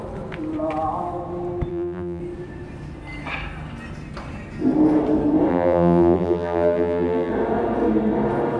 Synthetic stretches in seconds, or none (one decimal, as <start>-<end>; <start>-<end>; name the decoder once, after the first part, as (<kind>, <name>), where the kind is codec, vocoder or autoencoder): 1.7-2.2 (vocoder, BigVGAN v2); 5.5-7.3